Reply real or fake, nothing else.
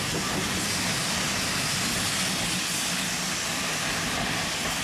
real